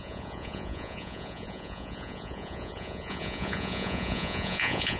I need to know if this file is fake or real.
fake